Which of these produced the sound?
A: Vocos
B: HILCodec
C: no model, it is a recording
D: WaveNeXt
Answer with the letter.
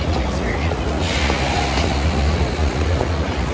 A